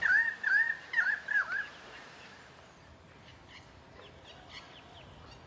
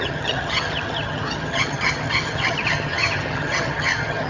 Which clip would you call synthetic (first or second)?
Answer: second